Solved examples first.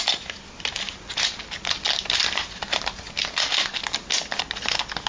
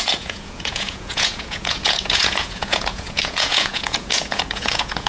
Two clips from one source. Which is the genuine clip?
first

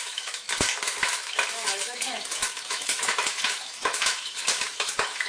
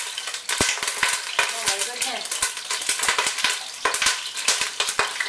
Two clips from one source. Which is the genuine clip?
second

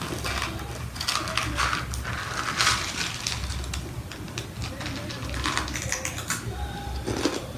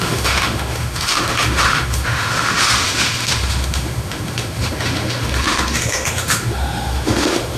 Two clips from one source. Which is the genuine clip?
first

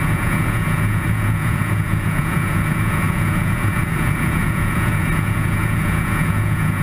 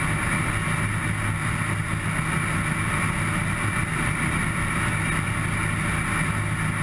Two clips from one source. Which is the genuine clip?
second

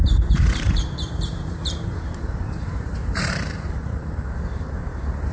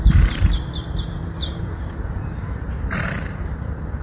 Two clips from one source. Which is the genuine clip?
second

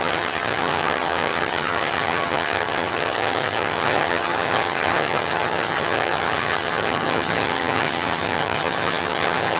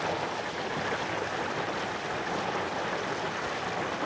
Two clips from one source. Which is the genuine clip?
second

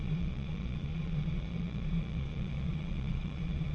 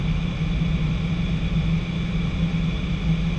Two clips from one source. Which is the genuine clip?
second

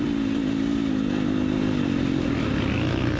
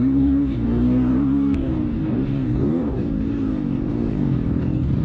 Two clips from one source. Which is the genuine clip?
first